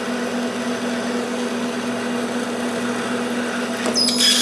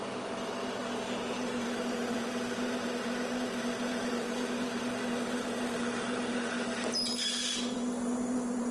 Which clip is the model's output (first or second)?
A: second